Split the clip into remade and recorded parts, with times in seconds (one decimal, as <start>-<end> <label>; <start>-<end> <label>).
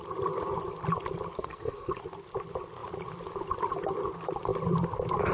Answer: 0.0-1.4 recorded; 1.4-1.9 remade; 1.9-5.3 recorded